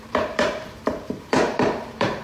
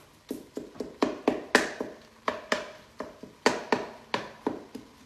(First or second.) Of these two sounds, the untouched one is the second